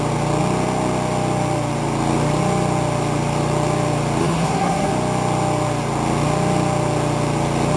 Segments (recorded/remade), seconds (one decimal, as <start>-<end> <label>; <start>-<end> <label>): 0.0-4.2 recorded; 4.2-4.9 remade; 4.9-7.8 recorded